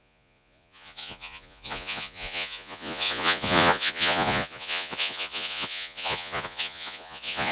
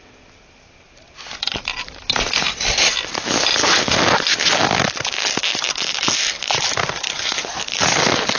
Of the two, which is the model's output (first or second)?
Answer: first